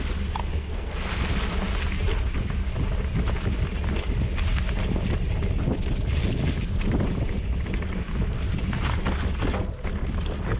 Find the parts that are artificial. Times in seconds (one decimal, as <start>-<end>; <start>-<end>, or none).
0.4-0.9